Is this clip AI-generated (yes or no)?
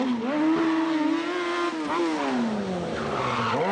no